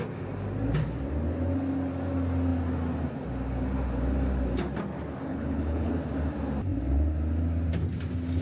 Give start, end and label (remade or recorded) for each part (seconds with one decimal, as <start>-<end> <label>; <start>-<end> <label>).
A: 0.0-5.3 recorded; 5.3-5.9 remade; 5.9-8.4 recorded